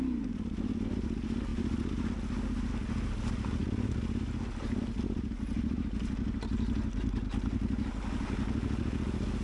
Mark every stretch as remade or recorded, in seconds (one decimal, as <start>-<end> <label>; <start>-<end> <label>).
0.0-9.4 recorded